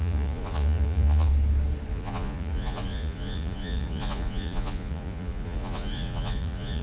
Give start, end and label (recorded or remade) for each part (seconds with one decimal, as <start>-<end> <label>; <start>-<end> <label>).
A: 0.0-1.3 remade; 1.3-1.9 recorded; 1.9-6.8 remade